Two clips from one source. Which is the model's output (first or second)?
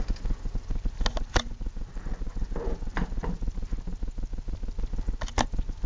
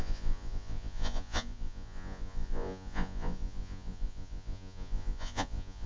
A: second